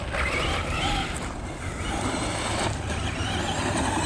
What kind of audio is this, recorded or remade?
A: remade